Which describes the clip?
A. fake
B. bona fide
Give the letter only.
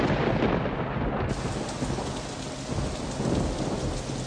B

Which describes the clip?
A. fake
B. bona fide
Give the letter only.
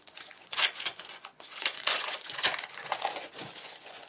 A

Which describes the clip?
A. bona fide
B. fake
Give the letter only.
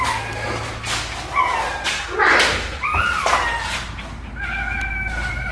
A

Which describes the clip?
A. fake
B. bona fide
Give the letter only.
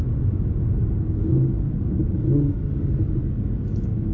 B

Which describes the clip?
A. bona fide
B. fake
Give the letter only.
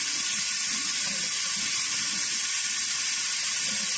A